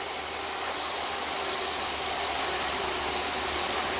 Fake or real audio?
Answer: real